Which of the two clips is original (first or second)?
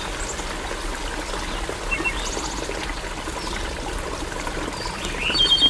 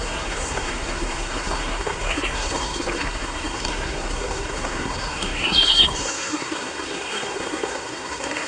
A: first